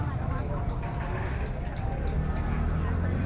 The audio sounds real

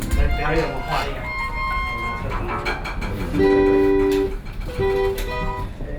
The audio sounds real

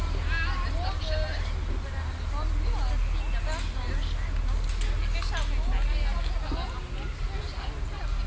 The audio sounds real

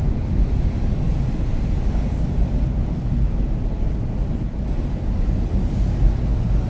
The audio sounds real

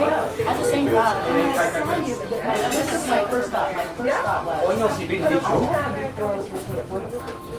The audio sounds fake